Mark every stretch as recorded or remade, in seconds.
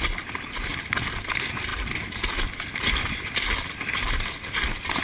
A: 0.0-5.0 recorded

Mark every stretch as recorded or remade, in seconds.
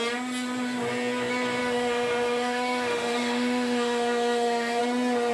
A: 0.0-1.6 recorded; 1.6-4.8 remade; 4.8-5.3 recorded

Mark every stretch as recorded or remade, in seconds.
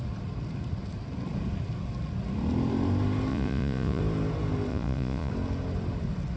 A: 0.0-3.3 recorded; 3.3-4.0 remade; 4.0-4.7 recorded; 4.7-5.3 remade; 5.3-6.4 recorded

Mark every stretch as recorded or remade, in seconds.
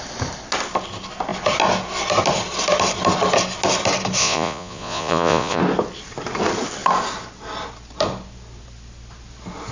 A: 0.0-4.2 recorded; 4.2-5.6 remade; 5.6-9.7 recorded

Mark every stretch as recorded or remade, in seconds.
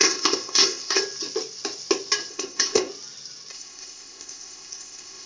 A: 0.0-1.0 remade; 1.0-2.3 recorded; 2.3-2.9 remade; 2.9-3.5 recorded; 3.5-5.3 remade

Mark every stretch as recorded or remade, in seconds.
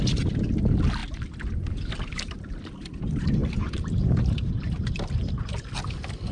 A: 0.0-3.4 recorded; 3.4-5.2 remade; 5.2-6.3 recorded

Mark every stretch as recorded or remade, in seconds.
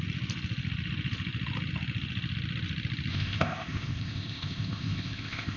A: 0.0-3.1 recorded; 3.1-5.6 remade